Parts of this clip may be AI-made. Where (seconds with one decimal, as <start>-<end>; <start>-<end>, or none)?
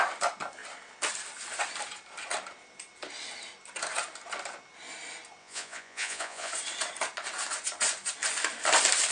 5.4-6.5